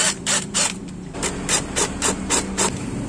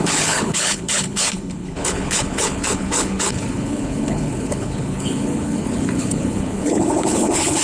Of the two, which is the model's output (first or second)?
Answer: second